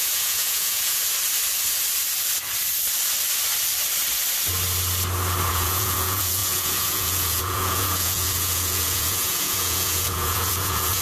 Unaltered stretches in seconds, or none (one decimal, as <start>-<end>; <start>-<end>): 1.0-5.5